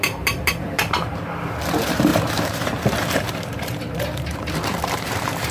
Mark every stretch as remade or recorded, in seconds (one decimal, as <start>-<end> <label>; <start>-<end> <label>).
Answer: 0.0-5.5 remade